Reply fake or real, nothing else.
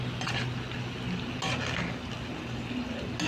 real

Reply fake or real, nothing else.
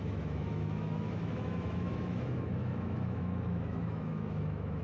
fake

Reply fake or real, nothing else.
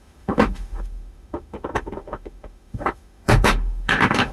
fake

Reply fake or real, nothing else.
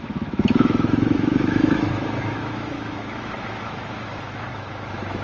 fake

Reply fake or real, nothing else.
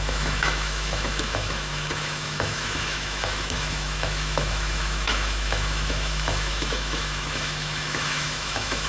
fake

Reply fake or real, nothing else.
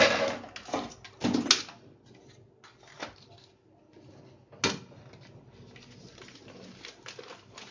real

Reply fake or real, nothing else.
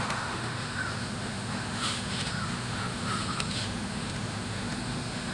fake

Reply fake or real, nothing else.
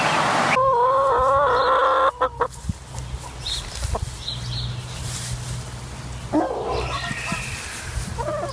real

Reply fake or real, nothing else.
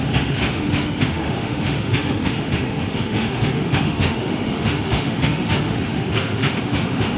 fake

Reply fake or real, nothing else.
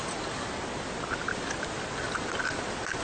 real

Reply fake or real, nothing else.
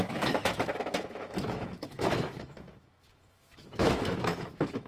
fake